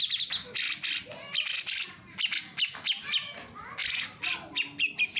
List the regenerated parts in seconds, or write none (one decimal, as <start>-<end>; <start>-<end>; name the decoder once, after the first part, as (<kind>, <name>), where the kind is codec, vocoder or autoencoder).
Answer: none